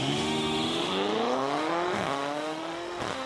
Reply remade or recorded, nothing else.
remade